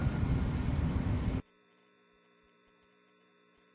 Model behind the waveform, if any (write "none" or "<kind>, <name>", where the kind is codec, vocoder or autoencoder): vocoder, BigVGAN v2